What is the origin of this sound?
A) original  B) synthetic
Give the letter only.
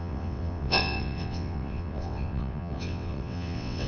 B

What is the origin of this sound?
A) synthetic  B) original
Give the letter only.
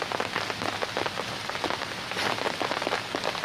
B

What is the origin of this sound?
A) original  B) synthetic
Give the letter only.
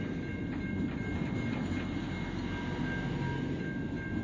A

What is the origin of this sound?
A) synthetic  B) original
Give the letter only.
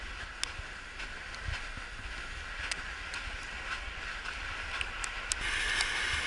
B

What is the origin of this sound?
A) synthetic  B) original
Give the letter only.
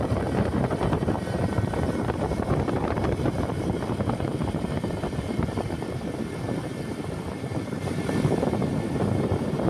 A